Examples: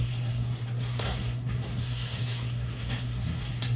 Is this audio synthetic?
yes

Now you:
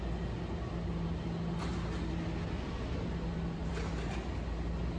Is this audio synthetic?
no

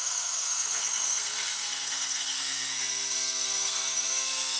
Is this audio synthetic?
yes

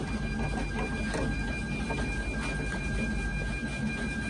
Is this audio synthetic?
no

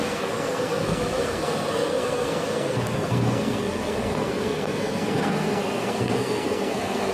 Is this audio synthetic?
yes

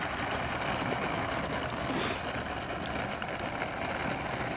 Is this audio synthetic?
no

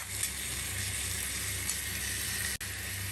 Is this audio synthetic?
no